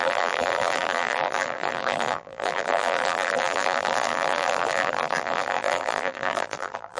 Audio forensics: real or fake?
fake